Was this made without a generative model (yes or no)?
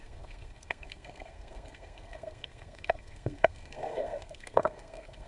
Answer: no